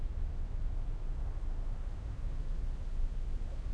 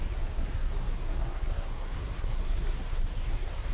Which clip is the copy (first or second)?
second